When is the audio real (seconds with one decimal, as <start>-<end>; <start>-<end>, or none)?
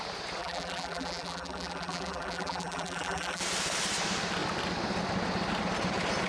0.0-0.4; 3.4-6.3